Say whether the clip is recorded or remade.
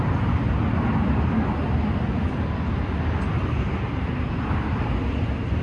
recorded